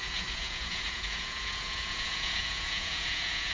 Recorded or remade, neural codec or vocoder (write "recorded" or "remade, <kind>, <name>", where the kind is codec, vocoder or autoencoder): remade, vocoder, Vocos